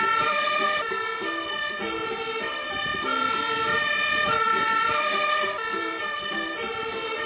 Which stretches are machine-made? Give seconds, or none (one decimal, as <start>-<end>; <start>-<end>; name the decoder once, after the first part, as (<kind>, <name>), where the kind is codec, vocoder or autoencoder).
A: 0.0-7.3 (vocoder, BigVGAN v2)